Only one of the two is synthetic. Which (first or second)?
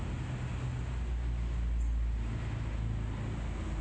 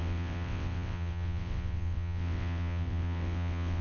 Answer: second